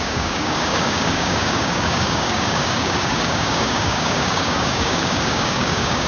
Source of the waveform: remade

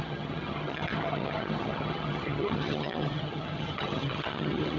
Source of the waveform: remade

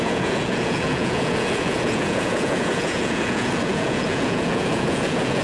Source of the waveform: remade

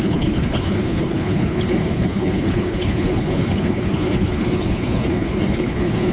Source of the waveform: remade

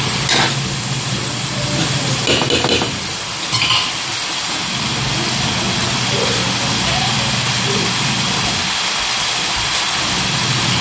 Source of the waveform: recorded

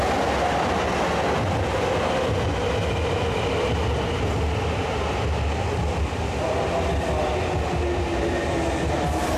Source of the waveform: recorded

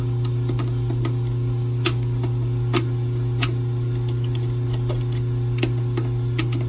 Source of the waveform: recorded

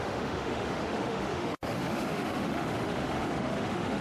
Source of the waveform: remade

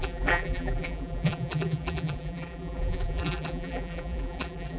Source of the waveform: remade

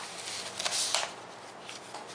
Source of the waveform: recorded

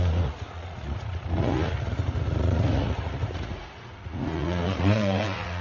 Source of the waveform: remade